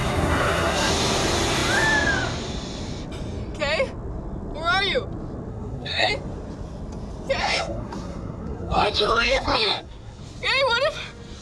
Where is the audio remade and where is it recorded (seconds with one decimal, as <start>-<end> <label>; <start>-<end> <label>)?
0.0-0.9 remade; 0.9-5.5 recorded; 5.5-6.1 remade; 6.1-7.4 recorded; 7.4-10.2 remade; 10.2-11.4 recorded